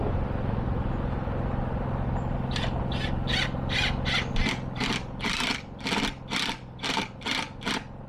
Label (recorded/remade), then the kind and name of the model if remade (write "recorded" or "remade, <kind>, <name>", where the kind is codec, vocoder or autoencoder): recorded